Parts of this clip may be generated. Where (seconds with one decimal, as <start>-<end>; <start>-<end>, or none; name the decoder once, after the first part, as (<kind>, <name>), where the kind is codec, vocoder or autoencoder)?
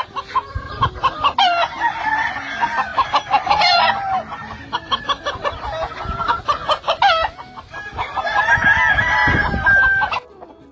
none